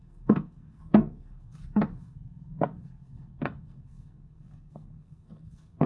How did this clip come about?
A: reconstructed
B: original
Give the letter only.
A